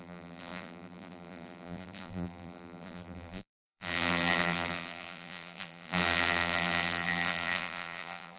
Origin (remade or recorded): remade